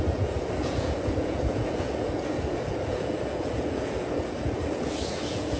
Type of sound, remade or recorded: remade